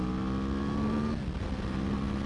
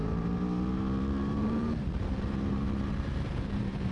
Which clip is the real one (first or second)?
first